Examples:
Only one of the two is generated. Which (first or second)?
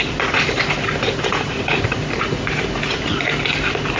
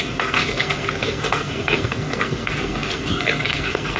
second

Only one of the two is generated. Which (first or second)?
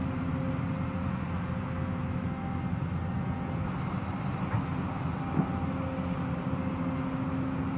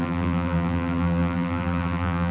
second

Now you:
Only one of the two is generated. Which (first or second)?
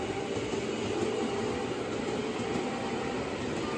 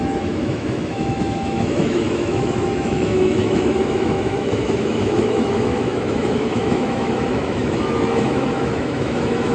second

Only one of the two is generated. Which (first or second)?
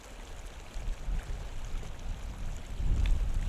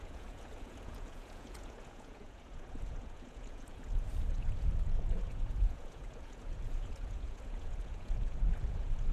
second